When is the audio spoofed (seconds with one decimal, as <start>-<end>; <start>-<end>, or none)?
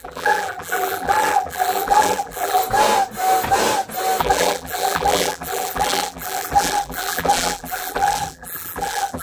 0.0-2.6; 4.2-9.2